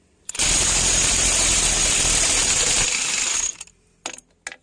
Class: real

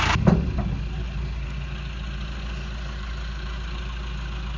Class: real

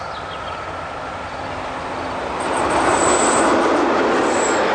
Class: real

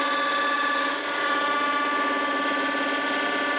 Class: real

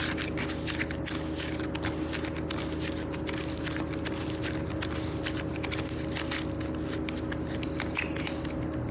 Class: real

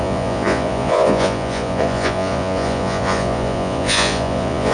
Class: fake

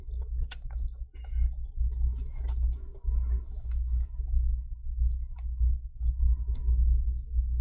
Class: fake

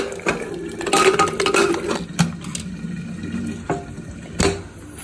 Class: real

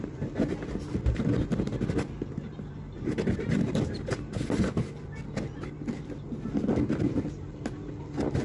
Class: real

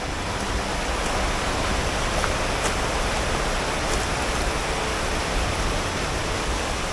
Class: real